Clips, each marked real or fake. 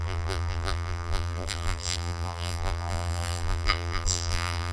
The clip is fake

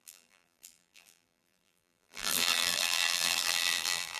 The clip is fake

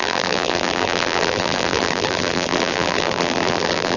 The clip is fake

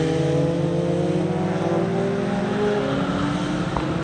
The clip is real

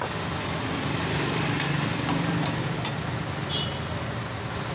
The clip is real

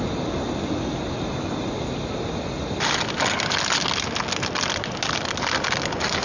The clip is real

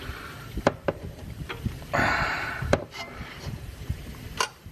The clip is fake